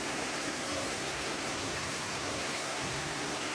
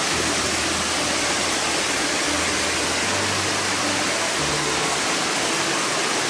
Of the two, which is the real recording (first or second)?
second